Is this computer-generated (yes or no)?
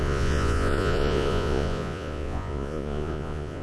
yes